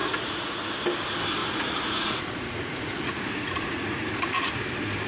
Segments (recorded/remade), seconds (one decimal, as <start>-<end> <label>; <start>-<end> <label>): 0.0-0.7 remade; 0.7-1.4 recorded; 1.4-4.5 remade; 4.5-5.1 recorded